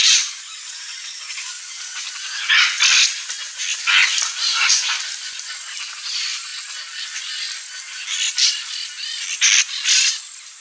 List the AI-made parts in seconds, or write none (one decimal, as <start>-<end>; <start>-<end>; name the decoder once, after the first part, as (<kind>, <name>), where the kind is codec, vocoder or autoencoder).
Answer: 0.0-2.4 (vocoder, Vocos)